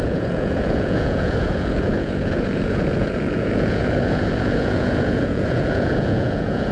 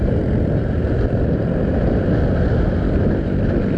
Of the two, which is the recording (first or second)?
second